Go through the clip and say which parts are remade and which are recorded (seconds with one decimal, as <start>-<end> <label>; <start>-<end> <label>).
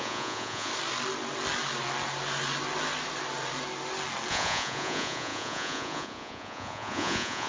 0.0-0.7 remade; 0.7-4.3 recorded; 4.3-7.5 remade